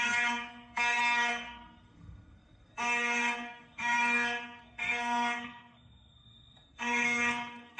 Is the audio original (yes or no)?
no